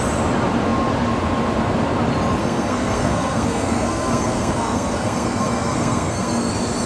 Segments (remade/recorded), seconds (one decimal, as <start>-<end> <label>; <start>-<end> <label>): 0.0-2.4 recorded; 2.4-6.5 remade; 6.5-6.9 recorded